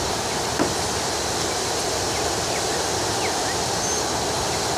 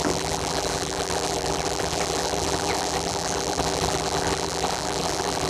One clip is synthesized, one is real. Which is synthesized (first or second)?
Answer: second